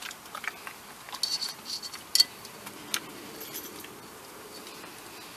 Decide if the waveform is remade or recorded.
recorded